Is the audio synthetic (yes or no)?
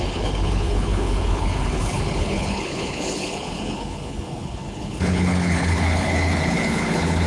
yes